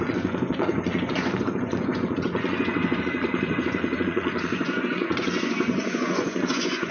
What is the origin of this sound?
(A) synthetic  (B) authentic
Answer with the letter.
A